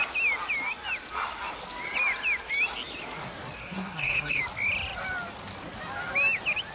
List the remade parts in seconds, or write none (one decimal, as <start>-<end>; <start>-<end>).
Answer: 3.6-4.4